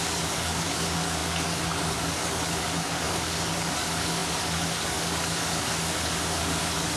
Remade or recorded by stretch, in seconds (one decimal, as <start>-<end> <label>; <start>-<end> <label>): 0.0-7.0 remade